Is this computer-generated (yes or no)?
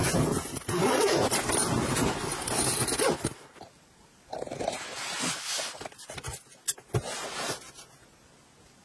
no